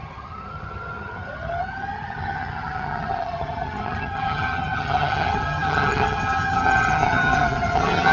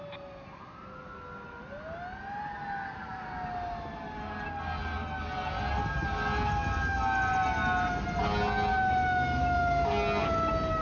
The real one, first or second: second